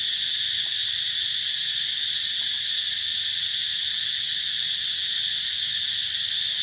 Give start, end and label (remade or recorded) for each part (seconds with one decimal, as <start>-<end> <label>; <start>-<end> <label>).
0.0-0.8 recorded; 0.8-1.4 remade; 1.4-6.6 recorded